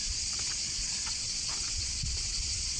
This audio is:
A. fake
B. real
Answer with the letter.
A